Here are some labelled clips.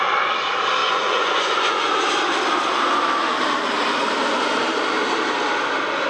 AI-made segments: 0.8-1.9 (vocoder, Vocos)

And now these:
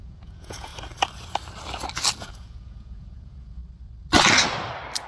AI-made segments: 0.0-0.7 (vocoder, Vocos); 2.2-3.6